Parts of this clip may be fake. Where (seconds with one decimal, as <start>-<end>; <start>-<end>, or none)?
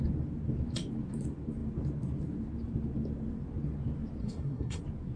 4.2-4.8